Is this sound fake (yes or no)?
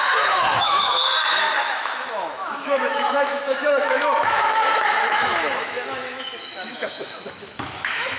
yes